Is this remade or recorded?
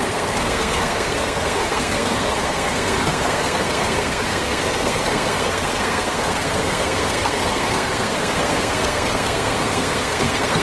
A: remade